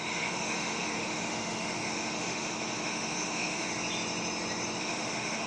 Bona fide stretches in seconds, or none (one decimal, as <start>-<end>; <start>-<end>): 3.7-4.8